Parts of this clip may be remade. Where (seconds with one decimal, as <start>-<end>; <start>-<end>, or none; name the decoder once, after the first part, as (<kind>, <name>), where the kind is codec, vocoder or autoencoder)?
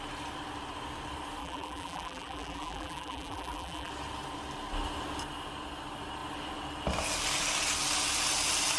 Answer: 1.4-3.9 (vocoder, BigVGAN v2)